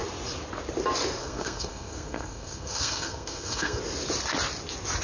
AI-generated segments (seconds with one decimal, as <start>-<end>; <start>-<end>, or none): 1.2-3.8